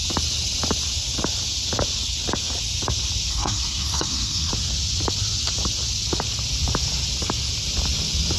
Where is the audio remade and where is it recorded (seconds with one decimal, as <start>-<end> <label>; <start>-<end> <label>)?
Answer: 0.0-3.3 recorded; 3.3-4.5 remade; 4.5-8.4 recorded